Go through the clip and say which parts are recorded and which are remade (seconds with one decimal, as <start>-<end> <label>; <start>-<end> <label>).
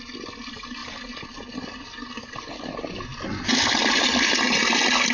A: 0.0-5.1 recorded